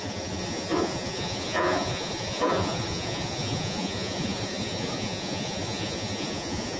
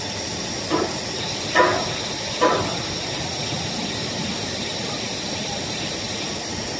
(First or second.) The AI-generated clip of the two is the first